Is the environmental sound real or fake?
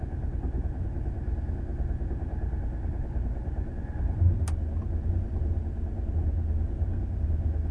real